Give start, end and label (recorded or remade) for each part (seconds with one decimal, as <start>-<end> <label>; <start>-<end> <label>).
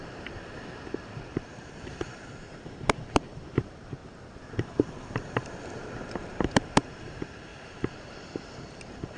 0.0-4.0 remade; 4.0-4.5 recorded; 4.5-9.2 remade